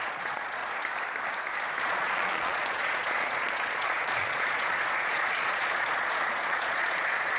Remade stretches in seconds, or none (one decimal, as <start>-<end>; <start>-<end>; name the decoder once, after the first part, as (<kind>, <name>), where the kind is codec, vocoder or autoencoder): 0.0-0.6 (vocoder, Vocos); 1.8-7.4